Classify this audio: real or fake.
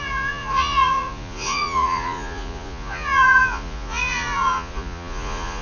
fake